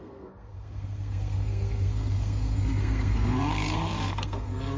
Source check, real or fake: fake